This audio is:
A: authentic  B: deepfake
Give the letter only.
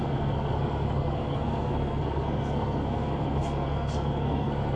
B